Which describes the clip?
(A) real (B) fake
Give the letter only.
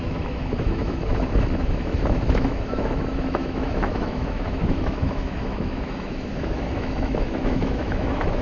B